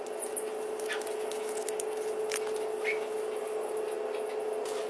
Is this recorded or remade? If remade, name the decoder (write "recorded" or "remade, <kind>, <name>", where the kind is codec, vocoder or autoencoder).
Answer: recorded